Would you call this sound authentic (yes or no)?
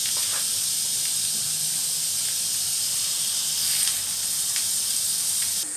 yes